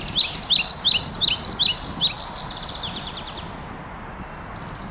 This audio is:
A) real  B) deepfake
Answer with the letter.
A